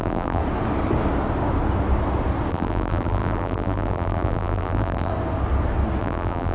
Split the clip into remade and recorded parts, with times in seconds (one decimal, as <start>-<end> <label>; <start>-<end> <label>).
0.0-0.4 remade; 0.4-2.5 recorded; 2.5-5.1 remade; 5.1-6.0 recorded; 6.0-6.5 remade